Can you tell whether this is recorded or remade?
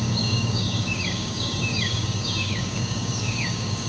remade